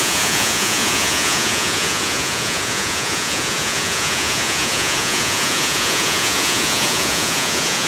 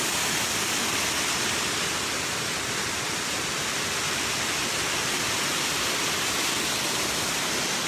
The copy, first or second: first